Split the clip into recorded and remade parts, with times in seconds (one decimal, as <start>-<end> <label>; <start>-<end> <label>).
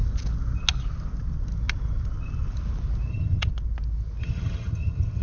0.0-3.1 recorded; 3.1-3.5 remade; 3.5-4.2 recorded; 4.2-5.2 remade